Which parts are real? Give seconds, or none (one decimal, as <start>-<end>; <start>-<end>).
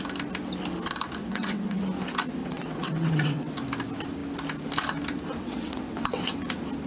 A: 0.0-1.2; 1.8-2.4; 3.5-5.4; 6.3-6.9